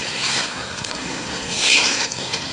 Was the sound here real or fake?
fake